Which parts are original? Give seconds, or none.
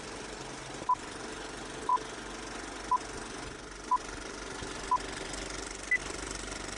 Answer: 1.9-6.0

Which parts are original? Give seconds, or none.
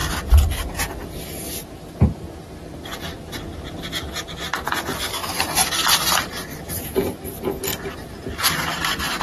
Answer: 0.0-5.2; 6.3-9.2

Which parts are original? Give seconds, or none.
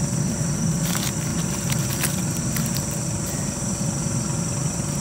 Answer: 0.0-1.3; 2.0-5.0